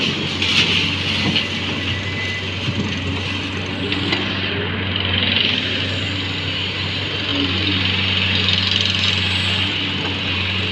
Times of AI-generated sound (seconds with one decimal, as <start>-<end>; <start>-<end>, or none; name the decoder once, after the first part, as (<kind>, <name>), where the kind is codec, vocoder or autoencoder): none